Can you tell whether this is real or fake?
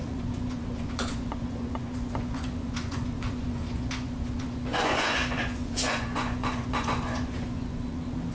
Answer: fake